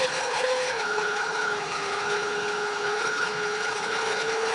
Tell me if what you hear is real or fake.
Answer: fake